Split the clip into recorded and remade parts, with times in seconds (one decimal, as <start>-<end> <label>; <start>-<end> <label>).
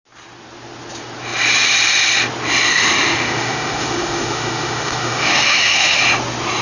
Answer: 0.0-2.7 recorded; 2.7-6.0 remade; 6.0-6.6 recorded